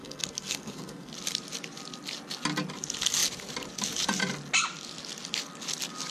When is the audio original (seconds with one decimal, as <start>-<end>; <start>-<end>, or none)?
1.1-6.1